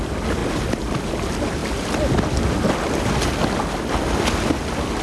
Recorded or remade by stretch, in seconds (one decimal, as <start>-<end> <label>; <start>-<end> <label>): 0.0-5.0 recorded